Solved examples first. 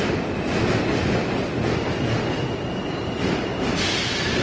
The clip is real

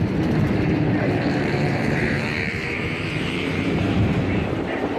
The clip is fake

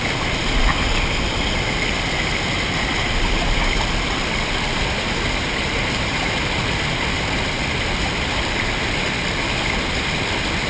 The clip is real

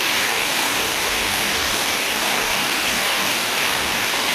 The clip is fake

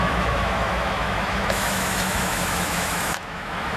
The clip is fake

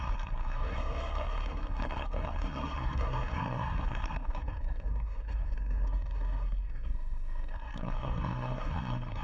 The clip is fake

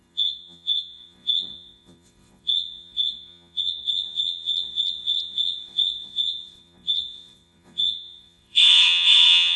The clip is fake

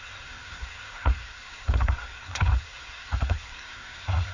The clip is fake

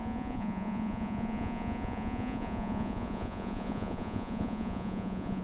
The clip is fake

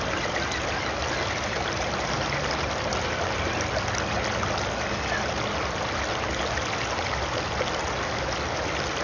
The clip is real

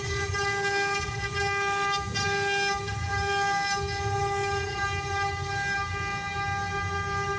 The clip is real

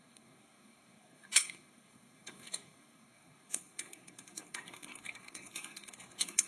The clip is fake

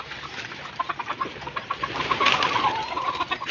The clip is real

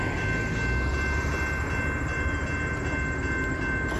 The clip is real